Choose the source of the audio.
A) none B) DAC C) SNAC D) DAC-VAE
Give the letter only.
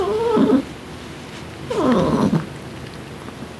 A